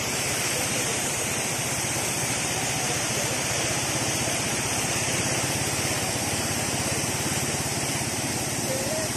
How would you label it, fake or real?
fake